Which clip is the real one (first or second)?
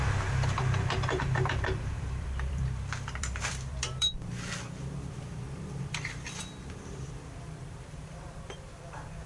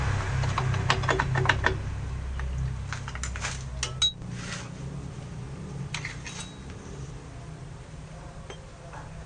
second